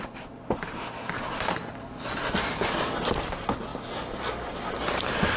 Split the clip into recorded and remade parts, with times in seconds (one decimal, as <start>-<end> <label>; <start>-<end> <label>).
0.0-5.4 recorded